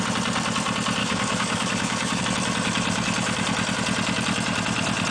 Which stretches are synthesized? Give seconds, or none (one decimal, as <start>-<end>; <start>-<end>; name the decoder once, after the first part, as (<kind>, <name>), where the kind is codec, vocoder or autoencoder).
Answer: 1.0-2.2 (codec, DAC)